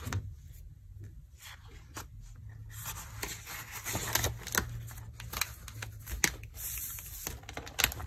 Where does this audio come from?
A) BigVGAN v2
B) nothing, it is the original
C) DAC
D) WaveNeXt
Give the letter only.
B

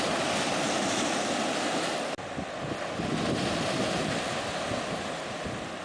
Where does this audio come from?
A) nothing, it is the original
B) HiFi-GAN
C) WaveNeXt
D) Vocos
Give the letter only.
A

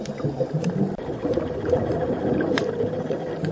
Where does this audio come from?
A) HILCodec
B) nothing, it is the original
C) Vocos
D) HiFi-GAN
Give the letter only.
B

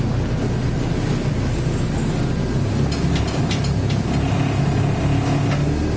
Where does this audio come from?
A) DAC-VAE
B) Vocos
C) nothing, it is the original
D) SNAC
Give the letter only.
C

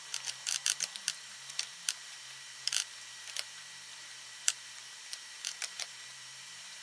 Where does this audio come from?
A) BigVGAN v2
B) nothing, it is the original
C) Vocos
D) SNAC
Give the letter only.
A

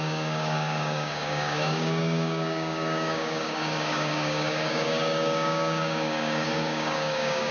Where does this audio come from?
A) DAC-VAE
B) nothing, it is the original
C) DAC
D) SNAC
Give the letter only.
C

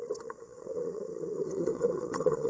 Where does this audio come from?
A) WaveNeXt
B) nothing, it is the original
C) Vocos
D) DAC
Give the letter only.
A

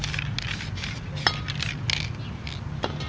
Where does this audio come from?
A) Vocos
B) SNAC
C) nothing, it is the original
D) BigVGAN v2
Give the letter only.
C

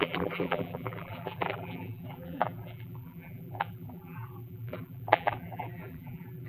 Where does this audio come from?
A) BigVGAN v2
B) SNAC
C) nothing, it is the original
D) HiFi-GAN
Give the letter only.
A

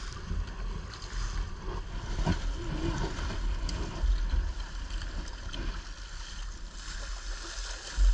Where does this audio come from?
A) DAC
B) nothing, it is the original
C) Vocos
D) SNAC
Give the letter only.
B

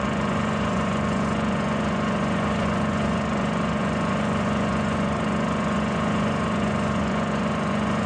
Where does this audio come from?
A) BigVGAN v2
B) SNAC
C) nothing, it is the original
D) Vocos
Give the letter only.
D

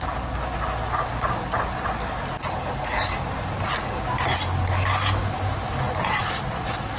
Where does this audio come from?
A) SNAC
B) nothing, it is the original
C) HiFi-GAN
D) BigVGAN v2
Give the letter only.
B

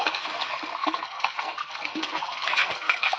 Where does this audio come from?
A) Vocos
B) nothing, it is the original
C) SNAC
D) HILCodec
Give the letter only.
C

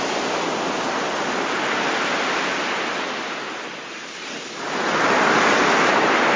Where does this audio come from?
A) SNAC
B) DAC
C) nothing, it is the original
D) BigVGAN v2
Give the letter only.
C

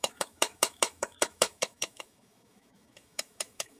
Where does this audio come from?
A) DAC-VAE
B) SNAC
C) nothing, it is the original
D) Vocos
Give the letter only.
A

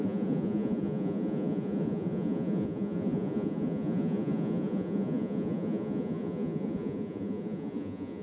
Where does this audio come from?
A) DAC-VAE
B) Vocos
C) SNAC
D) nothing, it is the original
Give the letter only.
B